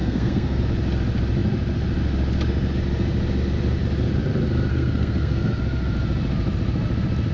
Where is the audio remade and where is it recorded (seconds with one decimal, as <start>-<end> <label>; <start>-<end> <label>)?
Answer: 0.0-0.6 remade; 0.6-4.7 recorded; 4.7-5.6 remade; 5.6-7.3 recorded